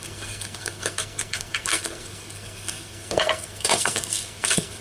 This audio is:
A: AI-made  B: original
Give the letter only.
A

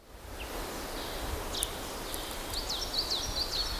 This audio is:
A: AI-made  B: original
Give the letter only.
B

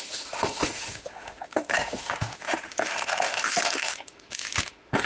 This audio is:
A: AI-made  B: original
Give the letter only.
A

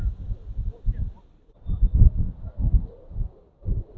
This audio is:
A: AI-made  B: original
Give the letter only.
B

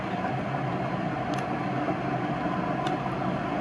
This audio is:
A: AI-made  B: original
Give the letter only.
B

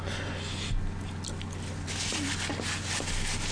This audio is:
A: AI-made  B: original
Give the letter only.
B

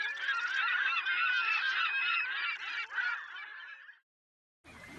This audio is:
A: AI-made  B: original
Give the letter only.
A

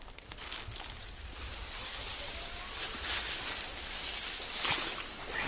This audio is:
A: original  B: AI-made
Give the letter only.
A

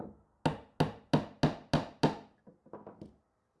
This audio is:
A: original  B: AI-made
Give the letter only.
A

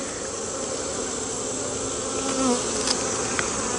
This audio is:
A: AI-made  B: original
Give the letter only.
B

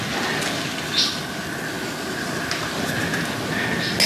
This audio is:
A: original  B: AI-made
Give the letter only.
A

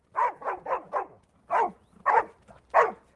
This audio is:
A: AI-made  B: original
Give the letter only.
B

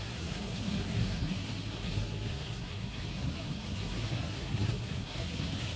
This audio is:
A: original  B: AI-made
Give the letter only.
B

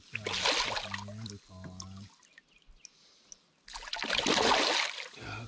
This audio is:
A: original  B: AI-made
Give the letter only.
A